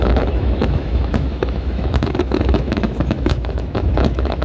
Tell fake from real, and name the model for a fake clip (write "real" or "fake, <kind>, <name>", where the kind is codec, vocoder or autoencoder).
fake, autoencoder, DAC-VAE